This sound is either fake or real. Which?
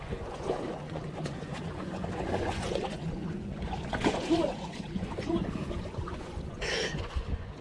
fake